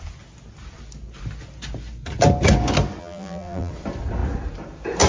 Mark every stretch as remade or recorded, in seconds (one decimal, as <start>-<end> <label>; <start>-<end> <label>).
0.0-3.0 recorded; 3.0-3.7 remade; 3.7-5.1 recorded